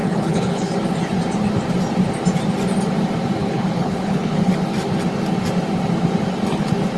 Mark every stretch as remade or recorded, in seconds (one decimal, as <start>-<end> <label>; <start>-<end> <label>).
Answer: 0.0-0.7 remade; 0.7-3.4 recorded; 3.4-4.5 remade; 4.5-7.0 recorded